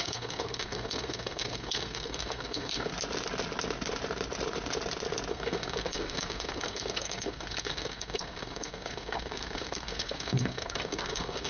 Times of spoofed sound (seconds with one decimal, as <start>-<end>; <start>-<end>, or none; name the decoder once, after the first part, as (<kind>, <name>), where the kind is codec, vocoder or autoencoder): 0.0-2.9 (codec, SNAC); 5.3-11.5